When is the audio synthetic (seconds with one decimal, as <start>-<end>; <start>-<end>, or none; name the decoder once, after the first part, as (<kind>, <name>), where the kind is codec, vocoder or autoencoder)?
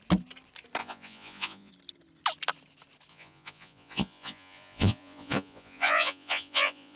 0.8-1.7 (vocoder, Vocos); 3.1-7.0